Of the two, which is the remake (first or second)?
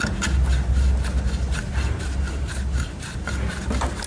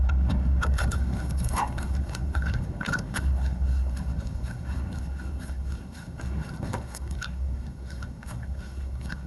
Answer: second